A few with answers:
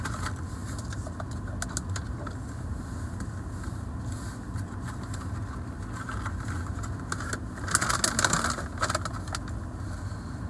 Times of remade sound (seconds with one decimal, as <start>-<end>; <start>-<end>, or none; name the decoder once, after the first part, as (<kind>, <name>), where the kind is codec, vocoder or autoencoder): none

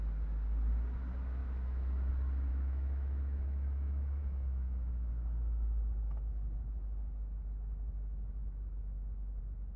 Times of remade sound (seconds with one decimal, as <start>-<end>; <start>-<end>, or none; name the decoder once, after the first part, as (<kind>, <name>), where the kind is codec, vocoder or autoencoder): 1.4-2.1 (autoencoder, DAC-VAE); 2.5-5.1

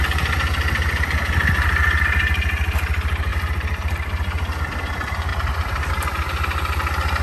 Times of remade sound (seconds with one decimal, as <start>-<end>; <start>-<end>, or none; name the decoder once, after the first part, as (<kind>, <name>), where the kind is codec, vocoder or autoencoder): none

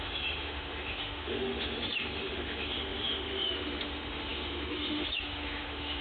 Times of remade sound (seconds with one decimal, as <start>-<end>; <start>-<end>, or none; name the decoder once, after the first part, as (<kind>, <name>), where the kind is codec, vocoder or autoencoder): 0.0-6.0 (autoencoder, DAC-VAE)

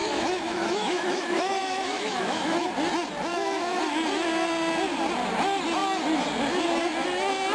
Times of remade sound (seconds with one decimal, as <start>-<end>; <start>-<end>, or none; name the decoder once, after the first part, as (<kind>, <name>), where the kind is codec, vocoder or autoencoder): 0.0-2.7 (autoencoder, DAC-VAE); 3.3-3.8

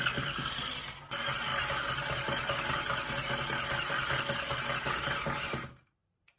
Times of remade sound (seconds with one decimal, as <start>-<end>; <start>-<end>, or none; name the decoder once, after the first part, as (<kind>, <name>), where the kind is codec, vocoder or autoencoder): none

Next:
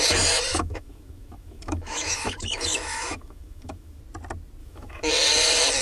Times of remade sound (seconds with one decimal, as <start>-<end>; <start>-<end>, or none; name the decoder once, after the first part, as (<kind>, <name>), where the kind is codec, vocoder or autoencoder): 0.5-4.0 (autoencoder, DAC-VAE); 4.6-5.1

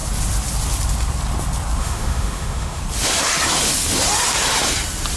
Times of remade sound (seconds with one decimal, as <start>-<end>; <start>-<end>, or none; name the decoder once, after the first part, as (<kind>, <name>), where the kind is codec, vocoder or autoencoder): 1.8-2.8 (autoencoder, DAC-VAE)